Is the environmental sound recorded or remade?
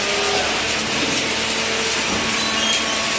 recorded